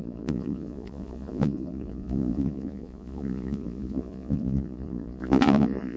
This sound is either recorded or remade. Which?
remade